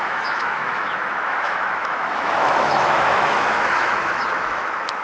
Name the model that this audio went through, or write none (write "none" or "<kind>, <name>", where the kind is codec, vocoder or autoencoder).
autoencoder, DAC-VAE